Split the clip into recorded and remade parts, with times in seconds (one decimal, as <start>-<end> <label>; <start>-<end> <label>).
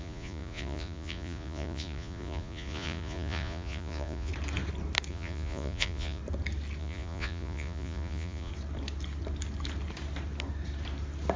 0.0-4.3 remade; 4.3-5.1 recorded; 5.1-6.2 remade; 6.2-6.8 recorded; 6.8-8.5 remade; 8.5-11.4 recorded